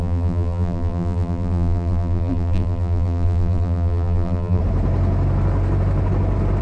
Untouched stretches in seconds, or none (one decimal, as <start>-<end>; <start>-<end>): 4.6-6.6